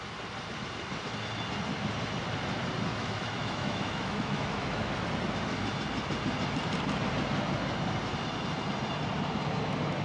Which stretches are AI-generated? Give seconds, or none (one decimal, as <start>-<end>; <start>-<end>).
2.9-4.9